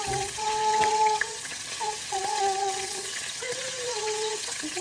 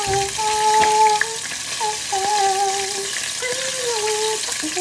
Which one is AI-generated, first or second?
first